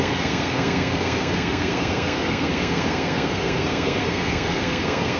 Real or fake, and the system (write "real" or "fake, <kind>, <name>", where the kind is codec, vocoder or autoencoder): fake, codec, SNAC